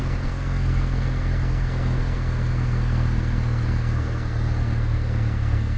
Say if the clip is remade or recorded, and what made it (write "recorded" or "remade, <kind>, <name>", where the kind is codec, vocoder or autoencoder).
remade, codec, SNAC